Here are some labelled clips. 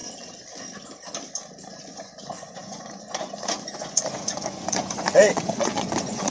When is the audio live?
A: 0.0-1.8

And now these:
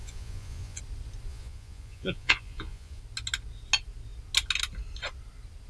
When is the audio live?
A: 0.8-1.3; 3.0-5.7

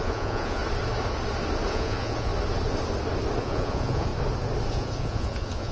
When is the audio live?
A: 0.6-1.7; 2.3-3.4; 4.1-4.7

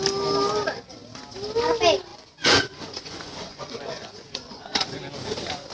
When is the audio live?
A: 0.0-2.1; 5.0-5.7

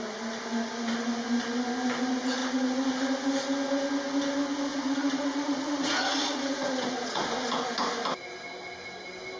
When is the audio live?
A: 0.0-4.7; 7.2-9.4

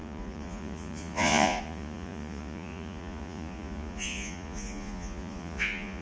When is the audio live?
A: none

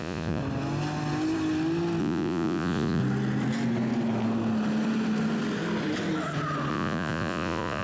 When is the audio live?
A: 0.4-2.0; 3.0-6.7